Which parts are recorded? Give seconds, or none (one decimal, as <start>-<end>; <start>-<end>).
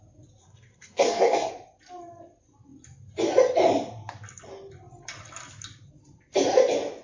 0.0-0.4; 1.5-7.0